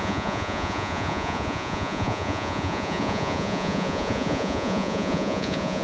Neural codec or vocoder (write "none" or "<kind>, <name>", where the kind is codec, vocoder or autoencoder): vocoder, Vocos